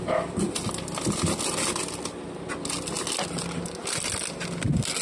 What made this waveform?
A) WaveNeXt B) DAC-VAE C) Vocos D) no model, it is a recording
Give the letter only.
D